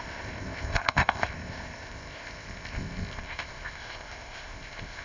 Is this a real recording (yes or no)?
no